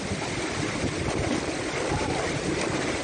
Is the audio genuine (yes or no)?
no